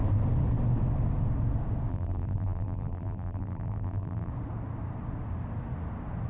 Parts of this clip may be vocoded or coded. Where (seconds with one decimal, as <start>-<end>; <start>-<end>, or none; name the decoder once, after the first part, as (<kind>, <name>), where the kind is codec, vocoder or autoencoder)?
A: 1.9-4.3 (vocoder, BigVGAN v2)